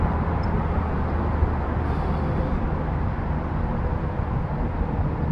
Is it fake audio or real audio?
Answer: real